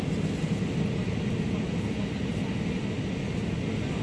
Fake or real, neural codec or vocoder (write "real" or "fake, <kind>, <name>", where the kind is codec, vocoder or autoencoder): real